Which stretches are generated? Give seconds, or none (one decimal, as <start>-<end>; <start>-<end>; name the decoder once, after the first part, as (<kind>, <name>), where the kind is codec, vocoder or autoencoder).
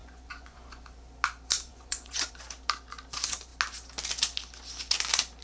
0.0-0.8 (vocoder, Vocos); 1.7-2.3